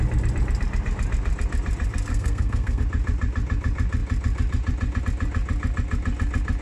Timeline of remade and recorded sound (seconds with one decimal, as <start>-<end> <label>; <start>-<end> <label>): 0.0-2.1 recorded; 2.1-2.8 remade; 2.8-6.6 recorded